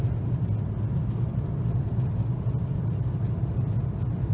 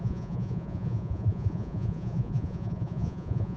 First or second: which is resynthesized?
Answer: second